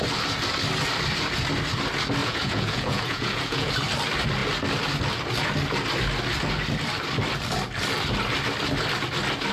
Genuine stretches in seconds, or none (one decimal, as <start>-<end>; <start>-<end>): 0.0-2.2; 3.7-9.5